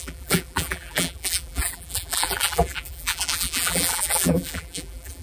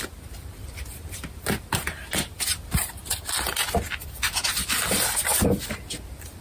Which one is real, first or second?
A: second